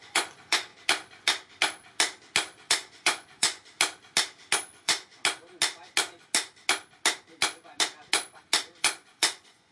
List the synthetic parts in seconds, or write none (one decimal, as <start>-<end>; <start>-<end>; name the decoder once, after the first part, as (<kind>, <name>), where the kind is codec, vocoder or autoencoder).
0.0-0.7 (vocoder, Vocos); 2.7-3.6; 4.6-5.1; 8.8-9.7